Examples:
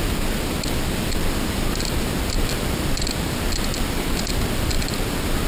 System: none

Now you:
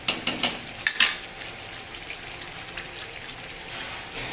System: none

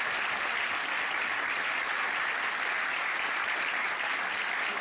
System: none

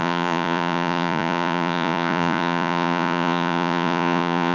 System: vocoder, Vocos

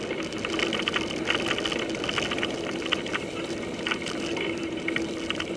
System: none